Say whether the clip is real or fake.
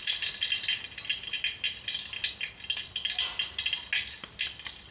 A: real